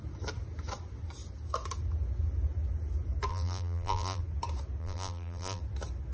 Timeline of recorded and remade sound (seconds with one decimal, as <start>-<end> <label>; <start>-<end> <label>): 0.0-3.3 recorded; 3.3-4.2 remade; 4.2-4.8 recorded; 4.8-5.6 remade; 5.6-6.1 recorded